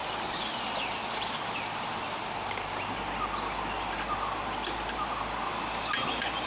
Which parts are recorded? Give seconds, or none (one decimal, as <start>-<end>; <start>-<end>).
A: 0.0-6.5